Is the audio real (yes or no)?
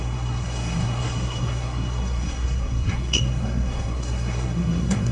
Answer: no